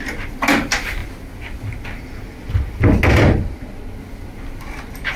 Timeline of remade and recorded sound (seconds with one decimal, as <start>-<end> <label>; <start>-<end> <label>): 0.0-5.2 recorded